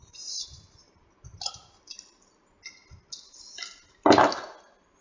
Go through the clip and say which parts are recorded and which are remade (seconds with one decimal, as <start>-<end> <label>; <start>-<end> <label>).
0.0-1.5 remade; 1.5-5.0 recorded